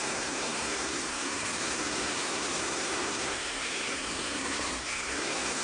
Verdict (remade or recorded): remade